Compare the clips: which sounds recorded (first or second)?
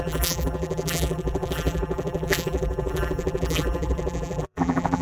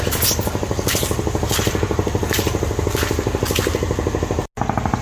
second